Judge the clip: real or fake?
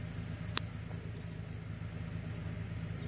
real